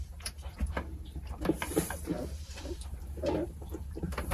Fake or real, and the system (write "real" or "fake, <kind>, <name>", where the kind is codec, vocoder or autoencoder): fake, vocoder, BigVGAN v2